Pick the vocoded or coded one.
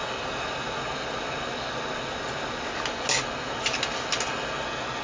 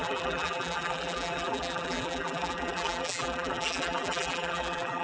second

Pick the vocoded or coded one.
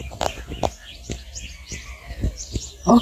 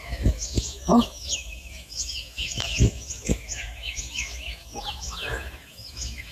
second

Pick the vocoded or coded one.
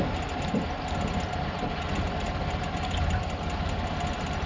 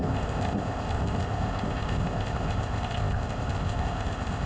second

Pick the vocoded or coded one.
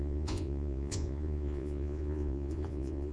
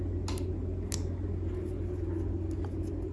first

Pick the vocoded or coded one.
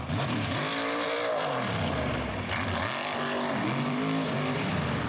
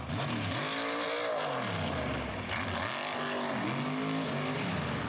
first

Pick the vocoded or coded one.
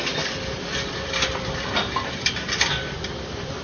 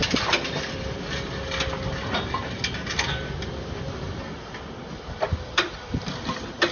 first